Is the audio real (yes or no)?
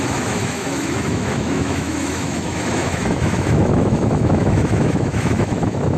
no